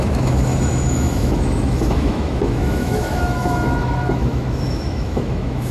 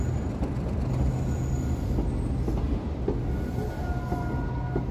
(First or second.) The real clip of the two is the second